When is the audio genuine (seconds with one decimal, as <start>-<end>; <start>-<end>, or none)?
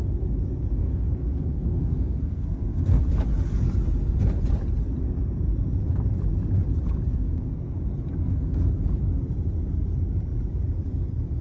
0.0-0.8; 3.0-7.1; 7.7-8.2; 8.7-11.4